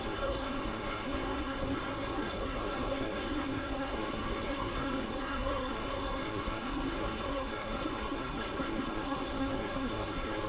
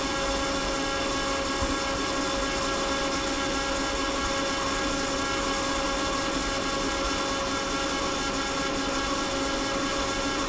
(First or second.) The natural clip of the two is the second